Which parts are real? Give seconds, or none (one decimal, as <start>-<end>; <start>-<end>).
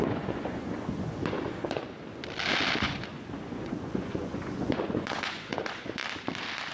2.0-2.8; 6.0-6.7